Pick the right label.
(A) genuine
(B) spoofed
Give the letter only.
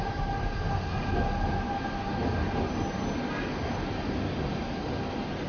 A